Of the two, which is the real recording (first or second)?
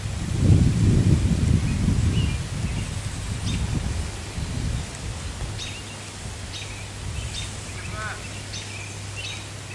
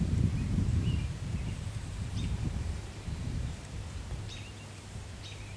first